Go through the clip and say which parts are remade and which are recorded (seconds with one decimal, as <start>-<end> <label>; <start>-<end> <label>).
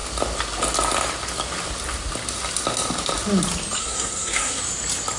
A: 0.0-3.8 recorded; 3.8-4.6 remade; 4.6-5.2 recorded